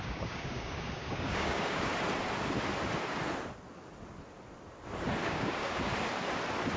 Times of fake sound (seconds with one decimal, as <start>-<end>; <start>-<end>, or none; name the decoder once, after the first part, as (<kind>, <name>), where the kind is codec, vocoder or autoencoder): 0.0-1.9 (codec, DAC); 5.3-5.9